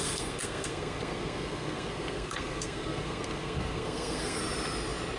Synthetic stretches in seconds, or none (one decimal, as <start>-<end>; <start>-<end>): 0.0-4.4